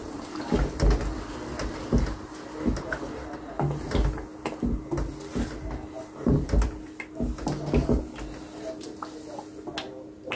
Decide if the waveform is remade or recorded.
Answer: recorded